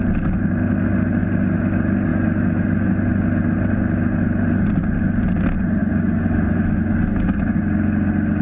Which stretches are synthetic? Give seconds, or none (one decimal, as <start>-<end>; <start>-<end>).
2.1-2.9; 5.8-7.6